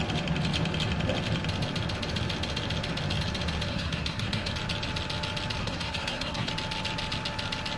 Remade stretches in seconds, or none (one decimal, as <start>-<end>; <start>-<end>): 3.7-4.5; 5.6-6.5